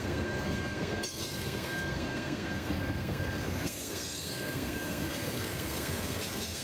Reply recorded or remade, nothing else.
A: remade